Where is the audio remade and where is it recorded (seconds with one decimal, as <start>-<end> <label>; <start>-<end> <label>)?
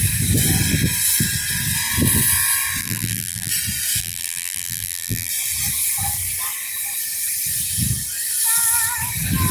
0.0-2.8 recorded; 2.8-3.5 remade; 3.5-4.0 recorded; 4.0-5.3 remade; 5.3-9.5 recorded